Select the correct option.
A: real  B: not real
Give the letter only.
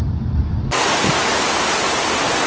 A